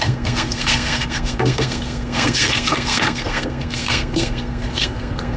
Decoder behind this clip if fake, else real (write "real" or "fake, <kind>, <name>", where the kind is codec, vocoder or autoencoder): fake, codec, SNAC